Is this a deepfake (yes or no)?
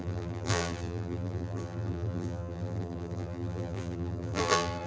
yes